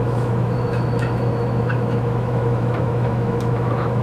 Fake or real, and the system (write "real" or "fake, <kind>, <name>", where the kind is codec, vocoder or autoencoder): fake, autoencoder, DAC-VAE